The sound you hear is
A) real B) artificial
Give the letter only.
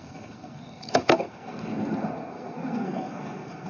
B